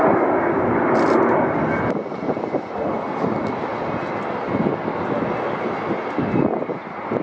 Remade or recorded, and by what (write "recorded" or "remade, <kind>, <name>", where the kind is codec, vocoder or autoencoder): recorded